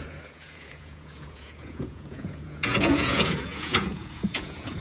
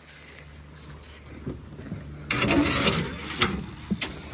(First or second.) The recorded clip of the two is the second